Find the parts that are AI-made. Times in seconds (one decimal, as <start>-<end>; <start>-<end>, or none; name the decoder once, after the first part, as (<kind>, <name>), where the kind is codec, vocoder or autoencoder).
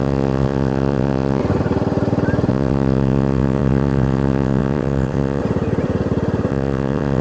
0.0-1.4 (vocoder, WaveNeXt); 2.5-5.4; 6.5-7.2